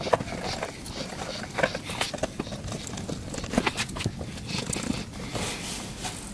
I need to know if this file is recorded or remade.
recorded